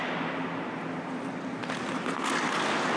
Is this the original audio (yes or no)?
yes